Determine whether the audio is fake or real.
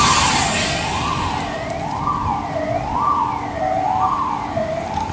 real